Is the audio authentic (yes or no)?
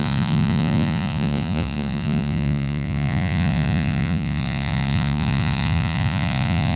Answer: no